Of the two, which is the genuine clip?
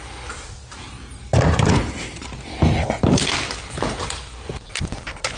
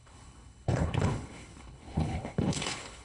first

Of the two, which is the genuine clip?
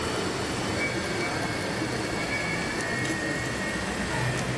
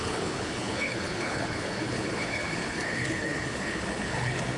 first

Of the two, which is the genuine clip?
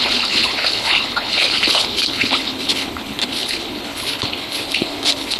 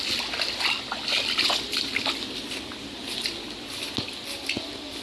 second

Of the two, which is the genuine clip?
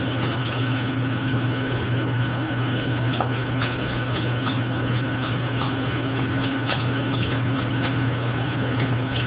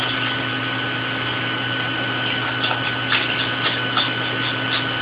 second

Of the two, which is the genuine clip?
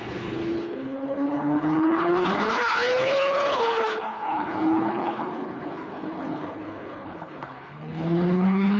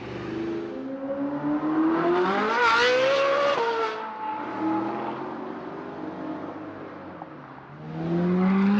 second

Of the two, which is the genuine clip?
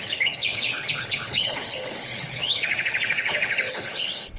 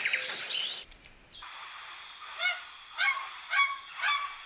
second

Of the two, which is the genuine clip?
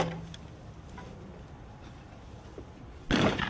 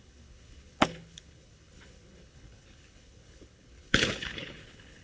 first